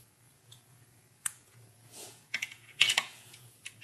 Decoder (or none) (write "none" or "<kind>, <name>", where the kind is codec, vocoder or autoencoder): vocoder, Vocos